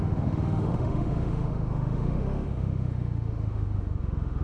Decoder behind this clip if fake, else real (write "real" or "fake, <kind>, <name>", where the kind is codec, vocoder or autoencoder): fake, autoencoder, DAC-VAE